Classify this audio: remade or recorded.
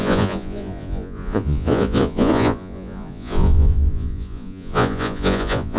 remade